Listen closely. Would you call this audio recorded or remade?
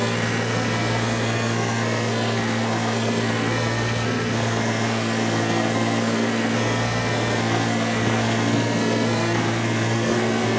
remade